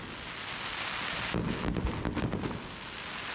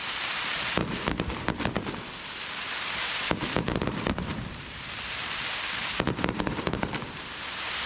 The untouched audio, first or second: first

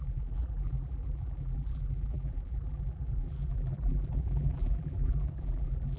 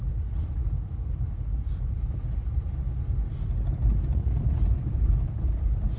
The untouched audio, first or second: second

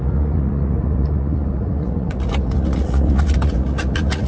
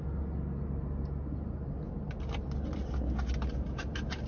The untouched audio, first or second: second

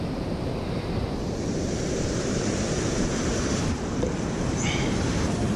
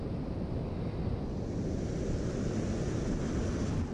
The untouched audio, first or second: second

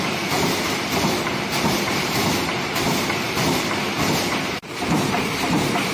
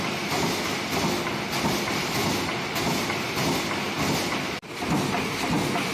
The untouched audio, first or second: second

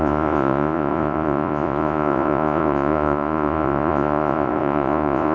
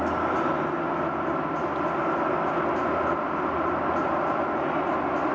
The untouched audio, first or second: second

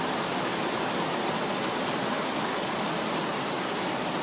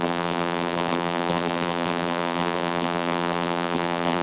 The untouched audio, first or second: first